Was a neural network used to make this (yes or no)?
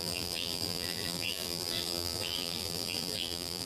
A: yes